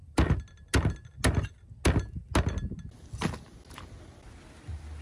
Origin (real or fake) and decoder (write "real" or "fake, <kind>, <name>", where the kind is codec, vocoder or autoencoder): real